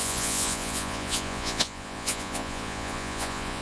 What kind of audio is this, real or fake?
fake